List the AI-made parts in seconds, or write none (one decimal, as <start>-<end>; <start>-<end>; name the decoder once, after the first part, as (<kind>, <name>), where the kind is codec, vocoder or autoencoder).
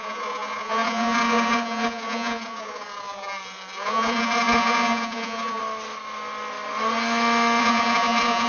0.0-5.6 (vocoder, Vocos); 7.6-8.5